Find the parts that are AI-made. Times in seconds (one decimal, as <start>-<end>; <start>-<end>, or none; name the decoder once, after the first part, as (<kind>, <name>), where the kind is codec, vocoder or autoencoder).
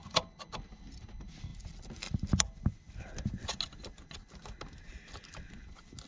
none